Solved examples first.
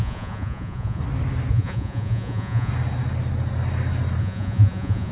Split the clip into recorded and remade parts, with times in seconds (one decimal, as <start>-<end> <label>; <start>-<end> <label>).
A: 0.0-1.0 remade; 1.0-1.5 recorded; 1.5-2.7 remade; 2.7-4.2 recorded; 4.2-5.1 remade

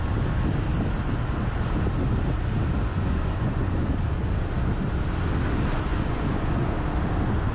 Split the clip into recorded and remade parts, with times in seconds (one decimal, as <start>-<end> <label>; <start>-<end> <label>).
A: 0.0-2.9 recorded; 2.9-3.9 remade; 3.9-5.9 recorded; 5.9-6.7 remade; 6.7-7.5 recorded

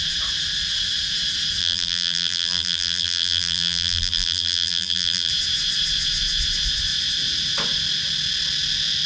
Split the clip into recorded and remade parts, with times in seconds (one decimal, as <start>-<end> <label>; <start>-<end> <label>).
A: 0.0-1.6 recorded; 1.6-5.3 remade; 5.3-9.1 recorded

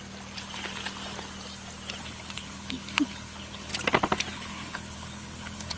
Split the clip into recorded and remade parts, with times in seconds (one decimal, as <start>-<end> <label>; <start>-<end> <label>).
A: 0.0-2.0 recorded; 2.0-3.7 remade; 3.7-4.3 recorded; 4.3-5.8 remade

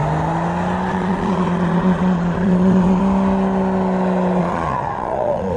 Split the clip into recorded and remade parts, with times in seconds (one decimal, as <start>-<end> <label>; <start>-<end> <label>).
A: 0.0-0.9 recorded; 0.9-3.0 remade; 3.0-4.4 recorded; 4.4-5.6 remade

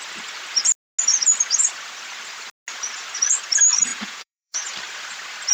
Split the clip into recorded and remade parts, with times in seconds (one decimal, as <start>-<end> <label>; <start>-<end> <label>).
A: 0.0-3.9 recorded; 3.9-4.6 remade; 4.6-5.5 recorded

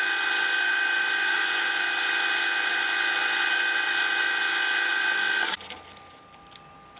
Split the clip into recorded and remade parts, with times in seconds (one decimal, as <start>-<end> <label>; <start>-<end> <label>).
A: 0.0-1.2 recorded; 1.2-1.8 remade; 1.8-7.0 recorded

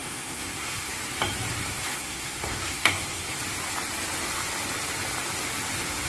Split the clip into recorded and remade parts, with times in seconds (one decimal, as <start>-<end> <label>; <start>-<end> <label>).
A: 0.0-1.0 remade; 1.0-1.7 recorded; 1.7-3.4 remade; 3.4-6.1 recorded